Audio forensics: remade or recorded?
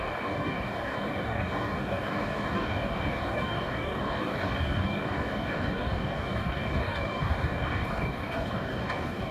remade